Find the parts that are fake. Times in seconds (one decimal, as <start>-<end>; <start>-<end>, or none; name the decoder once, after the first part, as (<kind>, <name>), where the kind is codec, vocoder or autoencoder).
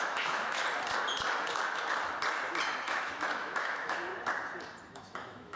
0.0-0.6 (autoencoder, DAC-VAE); 2.8-4.1; 4.9-5.6